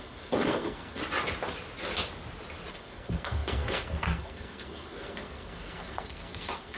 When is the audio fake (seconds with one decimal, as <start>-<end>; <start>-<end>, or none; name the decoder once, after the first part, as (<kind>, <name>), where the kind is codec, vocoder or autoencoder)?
0.0-1.0 (codec, SNAC); 2.7-6.8